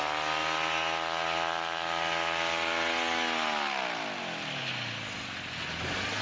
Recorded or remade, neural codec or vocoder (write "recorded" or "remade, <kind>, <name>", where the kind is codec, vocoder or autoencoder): recorded